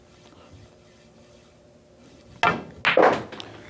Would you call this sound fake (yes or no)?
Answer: no